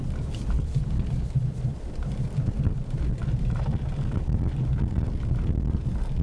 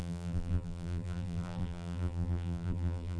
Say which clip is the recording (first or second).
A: first